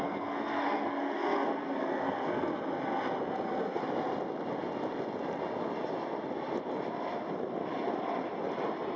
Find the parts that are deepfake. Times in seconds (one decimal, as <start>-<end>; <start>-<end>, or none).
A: 0.0-2.5; 3.2-3.8